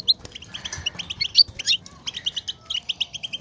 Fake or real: real